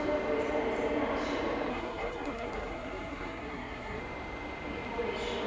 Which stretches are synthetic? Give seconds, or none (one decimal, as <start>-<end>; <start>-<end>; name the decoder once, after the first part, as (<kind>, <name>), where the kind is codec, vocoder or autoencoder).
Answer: 1.7-4.0 (codec, SNAC)